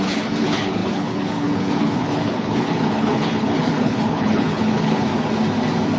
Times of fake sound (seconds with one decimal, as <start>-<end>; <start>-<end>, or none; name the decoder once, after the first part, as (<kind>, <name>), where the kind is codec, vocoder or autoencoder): 0.0-5.1 (codec, HILCodec)